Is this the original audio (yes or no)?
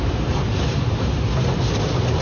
yes